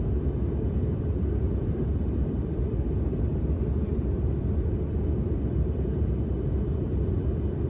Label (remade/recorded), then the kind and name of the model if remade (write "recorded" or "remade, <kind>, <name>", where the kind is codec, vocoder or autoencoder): remade, vocoder, BigVGAN v2